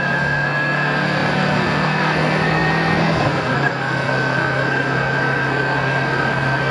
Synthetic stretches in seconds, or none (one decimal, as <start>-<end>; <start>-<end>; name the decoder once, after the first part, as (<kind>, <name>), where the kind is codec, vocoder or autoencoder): 0.0-6.7 (codec, SNAC)